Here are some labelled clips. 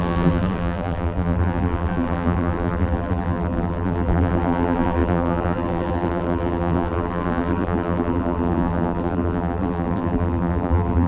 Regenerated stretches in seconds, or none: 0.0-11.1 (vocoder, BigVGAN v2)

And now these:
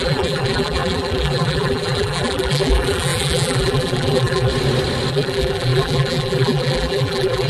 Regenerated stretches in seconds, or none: 0.0-4.5 (vocoder, BigVGAN v2); 5.1-7.5